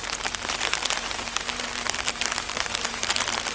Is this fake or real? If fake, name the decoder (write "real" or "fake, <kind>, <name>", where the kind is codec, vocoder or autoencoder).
fake, vocoder, BigVGAN v2